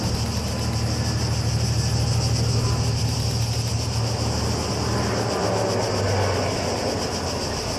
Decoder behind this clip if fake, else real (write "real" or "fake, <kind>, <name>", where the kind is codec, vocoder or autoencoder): real